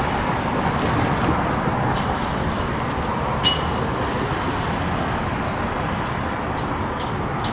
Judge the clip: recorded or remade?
recorded